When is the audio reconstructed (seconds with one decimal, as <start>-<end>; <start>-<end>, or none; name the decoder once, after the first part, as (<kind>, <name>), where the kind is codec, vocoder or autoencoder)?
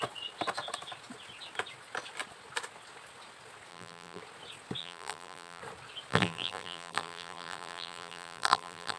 3.7-4.2 (vocoder, BigVGAN v2); 4.8-5.6; 6.1-9.0